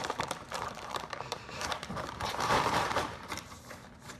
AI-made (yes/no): yes